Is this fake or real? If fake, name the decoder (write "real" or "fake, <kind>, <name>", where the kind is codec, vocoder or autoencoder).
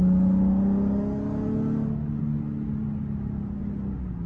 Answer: real